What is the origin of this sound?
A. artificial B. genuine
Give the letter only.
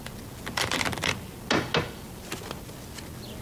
B